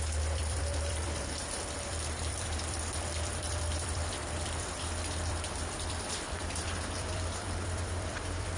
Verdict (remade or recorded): remade